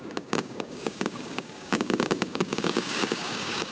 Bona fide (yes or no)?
no